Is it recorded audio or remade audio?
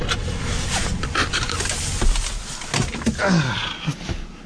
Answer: recorded